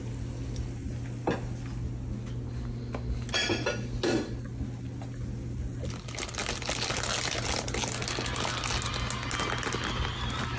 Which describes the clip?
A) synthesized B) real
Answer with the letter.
B